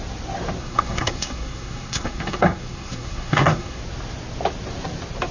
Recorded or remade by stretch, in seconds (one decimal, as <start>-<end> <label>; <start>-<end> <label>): 0.0-0.6 recorded; 0.6-3.8 remade; 3.8-5.3 recorded